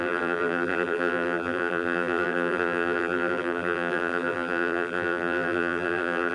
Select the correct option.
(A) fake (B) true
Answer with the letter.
A